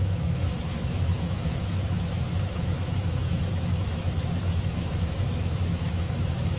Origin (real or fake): fake